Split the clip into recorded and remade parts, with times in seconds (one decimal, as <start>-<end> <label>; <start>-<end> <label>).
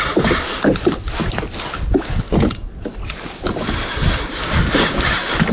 0.0-5.5 recorded